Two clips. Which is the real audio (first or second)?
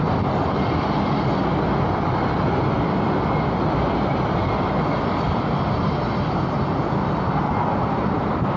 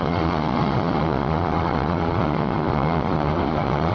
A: first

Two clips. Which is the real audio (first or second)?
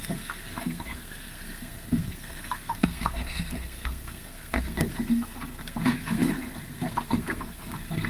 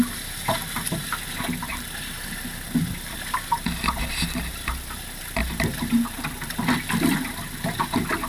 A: second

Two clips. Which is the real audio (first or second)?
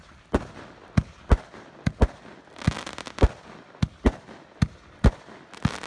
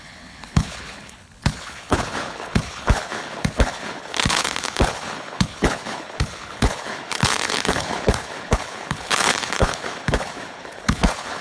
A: first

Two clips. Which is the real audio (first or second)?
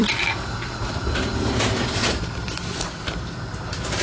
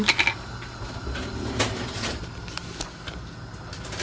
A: second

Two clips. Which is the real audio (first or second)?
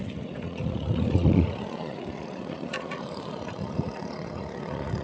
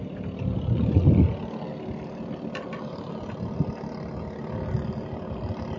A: second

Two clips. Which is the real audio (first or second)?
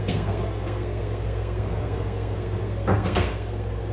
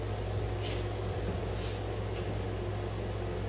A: second